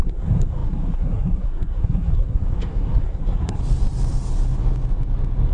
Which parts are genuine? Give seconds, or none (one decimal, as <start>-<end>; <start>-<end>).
3.6-5.5